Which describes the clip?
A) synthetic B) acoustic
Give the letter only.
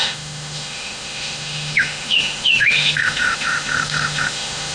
A